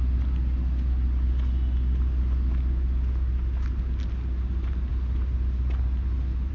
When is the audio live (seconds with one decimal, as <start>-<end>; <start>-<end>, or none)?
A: 0.0-6.5